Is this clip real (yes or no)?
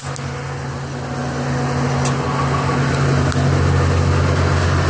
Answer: yes